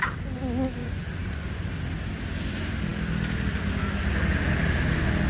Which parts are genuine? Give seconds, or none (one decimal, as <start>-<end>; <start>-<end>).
0.0-0.8; 1.7-5.3